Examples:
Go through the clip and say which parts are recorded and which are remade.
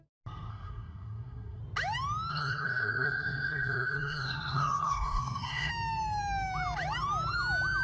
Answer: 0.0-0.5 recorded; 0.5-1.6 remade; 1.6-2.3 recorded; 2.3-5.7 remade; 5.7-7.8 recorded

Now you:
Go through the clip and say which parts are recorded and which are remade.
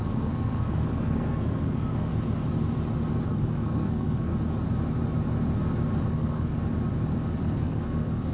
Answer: 0.0-2.1 remade; 2.1-3.3 recorded; 3.3-4.3 remade; 4.3-6.1 recorded; 6.1-6.5 remade; 6.5-7.4 recorded; 7.4-8.3 remade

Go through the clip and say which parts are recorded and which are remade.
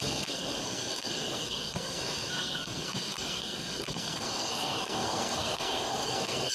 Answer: 0.0-6.5 remade